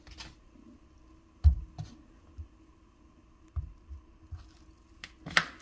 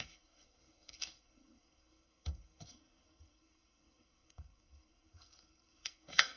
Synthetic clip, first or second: second